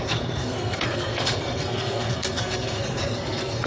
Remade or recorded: remade